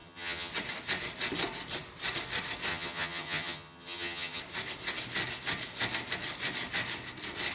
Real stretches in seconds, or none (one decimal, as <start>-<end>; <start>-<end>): 0.5-2.7; 4.4-7.5